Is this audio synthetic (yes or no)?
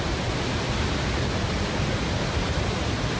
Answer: no